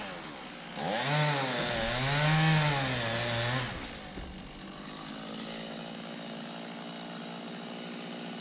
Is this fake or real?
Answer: real